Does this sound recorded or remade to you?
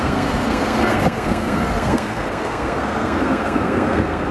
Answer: remade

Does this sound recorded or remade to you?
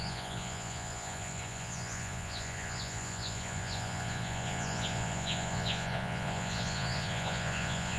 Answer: remade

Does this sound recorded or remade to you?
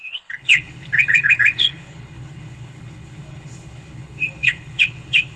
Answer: remade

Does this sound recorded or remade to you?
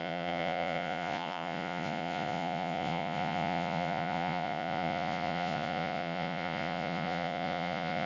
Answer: remade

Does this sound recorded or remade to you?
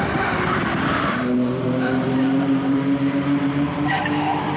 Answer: remade